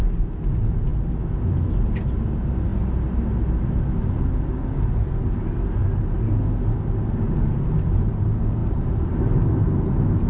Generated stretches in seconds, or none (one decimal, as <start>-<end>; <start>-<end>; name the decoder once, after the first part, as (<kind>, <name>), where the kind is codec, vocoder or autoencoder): none